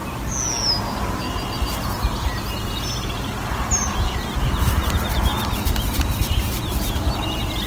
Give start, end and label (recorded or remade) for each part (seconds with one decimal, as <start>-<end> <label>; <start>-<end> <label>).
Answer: 0.0-4.4 recorded; 4.4-5.3 remade; 5.3-5.9 recorded; 5.9-7.7 remade